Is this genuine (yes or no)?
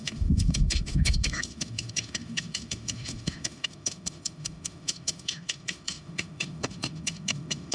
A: no